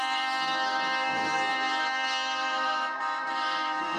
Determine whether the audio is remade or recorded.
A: remade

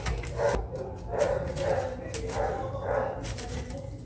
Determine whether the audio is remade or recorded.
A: recorded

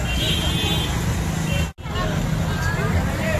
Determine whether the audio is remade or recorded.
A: recorded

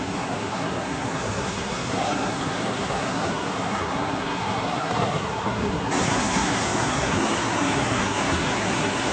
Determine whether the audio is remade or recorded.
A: remade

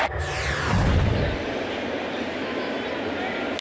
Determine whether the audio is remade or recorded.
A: recorded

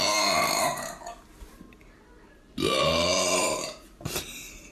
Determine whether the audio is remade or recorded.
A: recorded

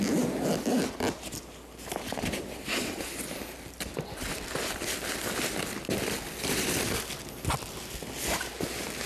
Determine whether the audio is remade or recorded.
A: recorded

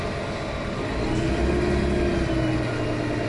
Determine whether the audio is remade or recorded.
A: recorded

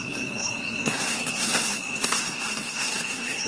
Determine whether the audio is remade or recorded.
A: remade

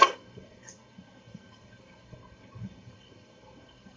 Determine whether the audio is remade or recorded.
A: remade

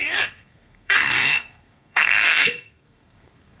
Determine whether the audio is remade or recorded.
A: remade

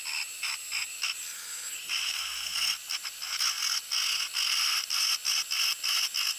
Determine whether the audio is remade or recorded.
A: recorded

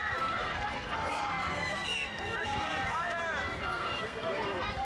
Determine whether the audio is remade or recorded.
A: remade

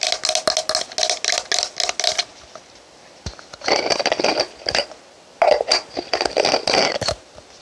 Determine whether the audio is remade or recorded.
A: recorded